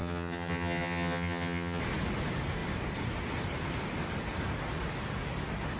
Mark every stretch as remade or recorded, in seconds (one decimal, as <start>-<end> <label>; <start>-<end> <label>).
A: 0.0-1.8 remade; 1.8-5.8 recorded